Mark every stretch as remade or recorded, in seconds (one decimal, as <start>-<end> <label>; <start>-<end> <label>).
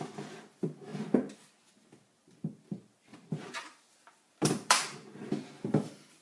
0.0-3.1 recorded; 3.1-5.3 remade; 5.3-6.2 recorded